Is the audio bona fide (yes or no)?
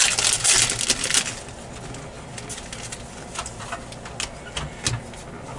yes